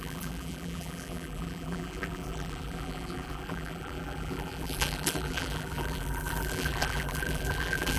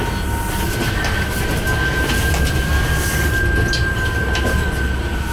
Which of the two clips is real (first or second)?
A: second